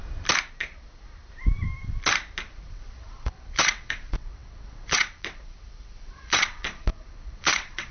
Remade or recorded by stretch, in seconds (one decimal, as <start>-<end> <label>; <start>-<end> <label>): 0.0-2.7 recorded; 2.7-7.9 remade